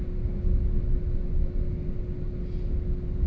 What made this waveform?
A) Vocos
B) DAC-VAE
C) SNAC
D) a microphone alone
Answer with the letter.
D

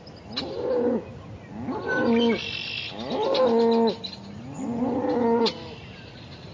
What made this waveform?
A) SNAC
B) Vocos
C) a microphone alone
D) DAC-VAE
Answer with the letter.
C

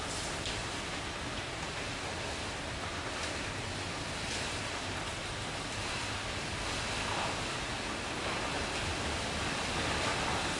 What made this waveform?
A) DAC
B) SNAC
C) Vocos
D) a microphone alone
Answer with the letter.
D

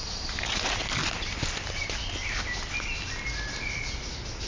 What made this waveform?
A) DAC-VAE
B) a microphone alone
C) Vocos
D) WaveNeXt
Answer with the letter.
B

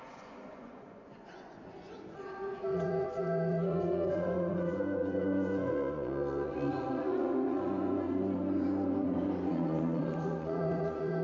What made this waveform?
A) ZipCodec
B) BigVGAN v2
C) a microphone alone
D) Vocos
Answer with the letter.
D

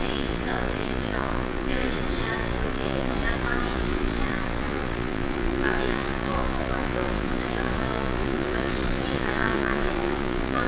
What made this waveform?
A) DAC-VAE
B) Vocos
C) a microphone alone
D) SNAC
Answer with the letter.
B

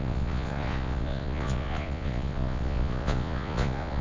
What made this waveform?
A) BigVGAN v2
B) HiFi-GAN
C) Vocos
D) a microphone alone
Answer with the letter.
C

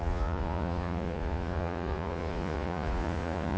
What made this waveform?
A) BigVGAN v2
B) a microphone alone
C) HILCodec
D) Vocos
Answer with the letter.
D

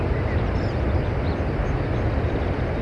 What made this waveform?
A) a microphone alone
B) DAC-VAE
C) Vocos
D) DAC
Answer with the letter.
A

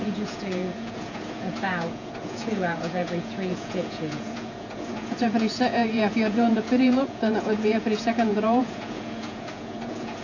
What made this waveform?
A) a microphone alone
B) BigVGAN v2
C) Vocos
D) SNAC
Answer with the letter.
C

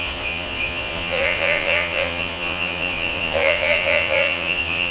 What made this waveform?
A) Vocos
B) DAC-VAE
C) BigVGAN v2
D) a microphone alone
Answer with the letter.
A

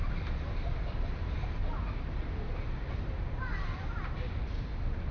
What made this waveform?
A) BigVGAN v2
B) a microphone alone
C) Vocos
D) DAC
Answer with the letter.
B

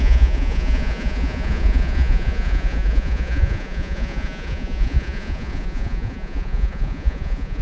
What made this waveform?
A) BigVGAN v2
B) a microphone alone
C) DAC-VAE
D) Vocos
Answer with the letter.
D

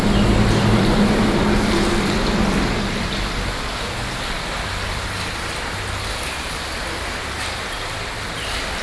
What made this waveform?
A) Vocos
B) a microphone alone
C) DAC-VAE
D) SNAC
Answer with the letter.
B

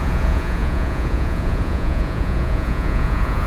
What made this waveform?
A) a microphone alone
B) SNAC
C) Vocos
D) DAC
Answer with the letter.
C